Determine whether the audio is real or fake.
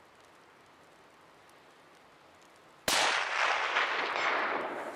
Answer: real